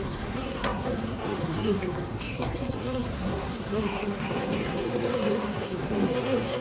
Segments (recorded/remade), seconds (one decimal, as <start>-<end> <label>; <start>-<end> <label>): 0.0-6.6 remade